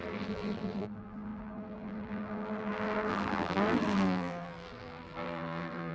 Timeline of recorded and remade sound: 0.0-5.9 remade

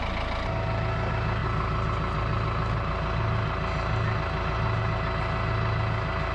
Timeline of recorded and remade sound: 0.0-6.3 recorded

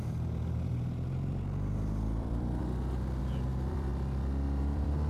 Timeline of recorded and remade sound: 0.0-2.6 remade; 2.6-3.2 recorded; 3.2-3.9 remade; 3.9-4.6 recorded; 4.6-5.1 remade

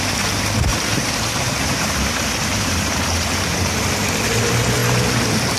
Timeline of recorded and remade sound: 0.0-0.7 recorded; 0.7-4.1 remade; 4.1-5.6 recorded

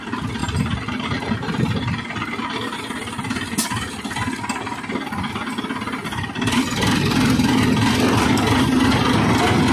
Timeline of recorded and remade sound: 0.0-0.4 recorded; 0.4-1.3 remade; 1.3-9.7 recorded